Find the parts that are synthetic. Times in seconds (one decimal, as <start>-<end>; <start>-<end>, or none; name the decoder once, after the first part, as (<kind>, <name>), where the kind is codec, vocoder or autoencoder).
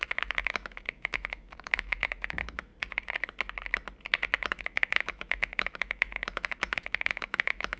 0.0-2.7 (autoencoder, DAC-VAE); 4.5-7.8